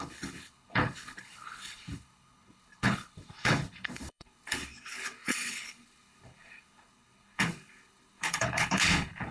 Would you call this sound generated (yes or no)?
yes